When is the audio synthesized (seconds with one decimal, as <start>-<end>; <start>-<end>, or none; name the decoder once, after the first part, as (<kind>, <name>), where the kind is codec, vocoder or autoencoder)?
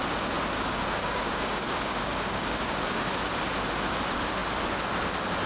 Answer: 1.0-3.1 (codec, DAC)